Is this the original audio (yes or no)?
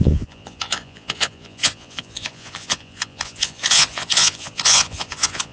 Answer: no